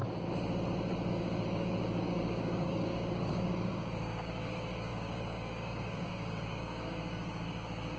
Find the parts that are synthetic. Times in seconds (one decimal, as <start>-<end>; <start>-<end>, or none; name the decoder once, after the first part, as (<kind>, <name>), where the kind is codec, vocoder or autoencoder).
1.1-8.0 (codec, DAC)